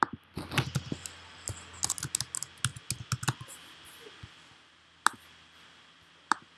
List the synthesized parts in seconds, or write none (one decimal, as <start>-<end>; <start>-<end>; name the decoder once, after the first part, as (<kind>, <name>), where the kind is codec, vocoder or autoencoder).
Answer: none